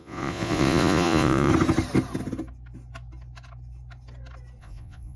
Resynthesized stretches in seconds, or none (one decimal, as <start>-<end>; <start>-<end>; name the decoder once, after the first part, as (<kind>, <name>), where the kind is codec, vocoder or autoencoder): 0.0-1.5 (vocoder, Vocos); 4.6-5.2